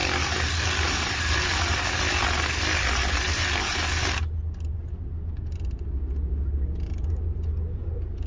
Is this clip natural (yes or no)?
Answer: yes